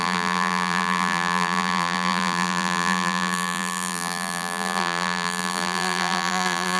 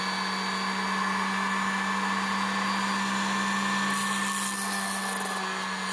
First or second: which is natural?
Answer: second